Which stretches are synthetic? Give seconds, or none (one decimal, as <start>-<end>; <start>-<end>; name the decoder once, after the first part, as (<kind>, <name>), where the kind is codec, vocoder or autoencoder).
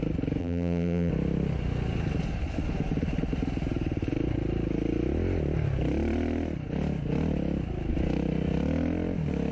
0.4-1.1 (vocoder, BigVGAN v2)